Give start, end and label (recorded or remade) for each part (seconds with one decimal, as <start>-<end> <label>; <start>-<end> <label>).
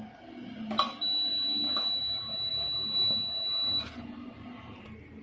0.0-5.2 recorded